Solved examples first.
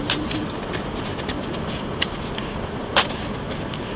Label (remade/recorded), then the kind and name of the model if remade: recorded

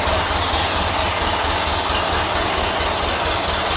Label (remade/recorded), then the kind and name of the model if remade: recorded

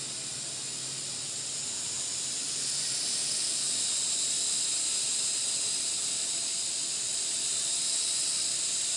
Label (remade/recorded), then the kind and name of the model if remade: recorded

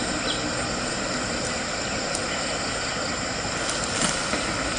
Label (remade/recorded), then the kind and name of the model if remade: recorded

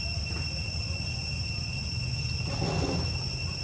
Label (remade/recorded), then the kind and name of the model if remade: recorded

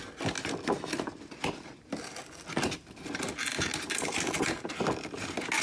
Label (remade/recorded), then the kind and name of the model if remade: recorded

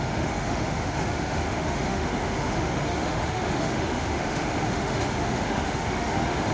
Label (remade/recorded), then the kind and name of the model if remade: remade, autoencoder, DAC-VAE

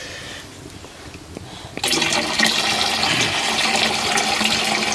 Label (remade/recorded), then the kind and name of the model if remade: recorded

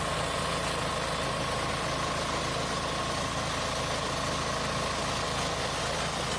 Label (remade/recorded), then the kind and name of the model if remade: recorded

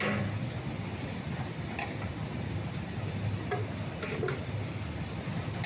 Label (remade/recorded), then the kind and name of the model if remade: recorded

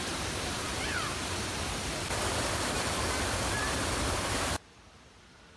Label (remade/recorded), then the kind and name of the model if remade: recorded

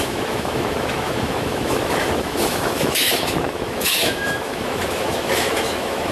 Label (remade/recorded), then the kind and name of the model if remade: remade, autoencoder, DAC-VAE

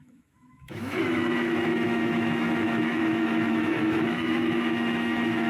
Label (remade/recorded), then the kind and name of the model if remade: remade, autoencoder, DAC-VAE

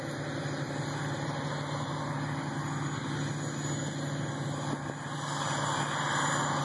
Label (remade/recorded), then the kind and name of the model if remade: recorded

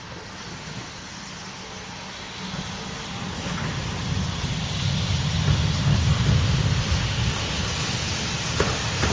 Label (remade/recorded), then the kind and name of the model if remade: recorded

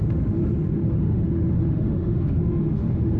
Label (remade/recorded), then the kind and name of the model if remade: remade, autoencoder, DAC-VAE